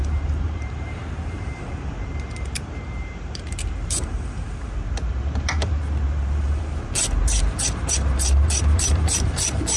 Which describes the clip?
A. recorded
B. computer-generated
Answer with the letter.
B